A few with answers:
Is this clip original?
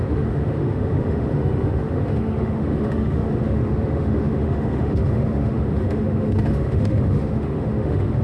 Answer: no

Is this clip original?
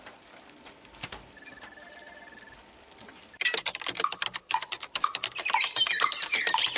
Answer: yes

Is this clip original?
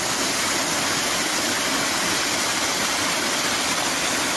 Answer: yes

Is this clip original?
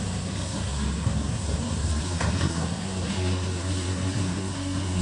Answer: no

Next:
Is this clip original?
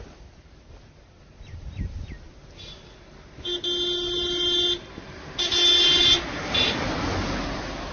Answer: yes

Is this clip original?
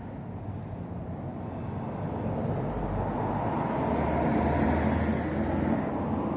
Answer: yes